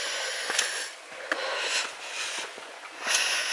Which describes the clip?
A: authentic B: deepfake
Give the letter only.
B